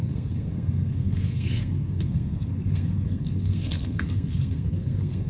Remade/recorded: remade